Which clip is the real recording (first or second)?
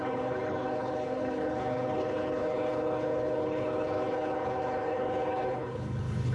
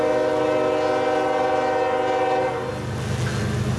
second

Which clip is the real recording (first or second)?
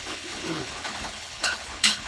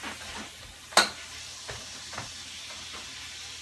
second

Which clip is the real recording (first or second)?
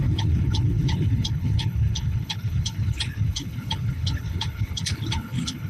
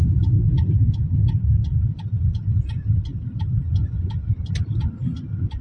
second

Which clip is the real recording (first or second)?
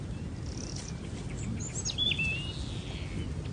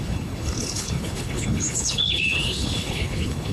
first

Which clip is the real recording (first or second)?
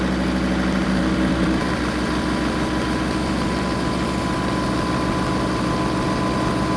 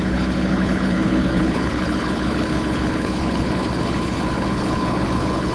first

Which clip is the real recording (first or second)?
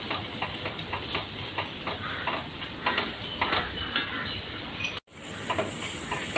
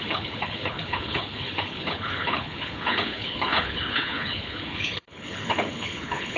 first